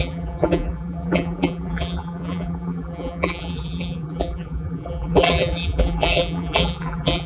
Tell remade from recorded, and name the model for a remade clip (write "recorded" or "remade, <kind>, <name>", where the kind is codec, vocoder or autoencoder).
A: remade, vocoder, BigVGAN v2